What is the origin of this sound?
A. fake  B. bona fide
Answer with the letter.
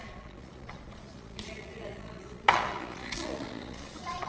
A